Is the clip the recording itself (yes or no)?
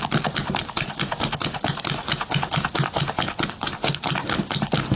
yes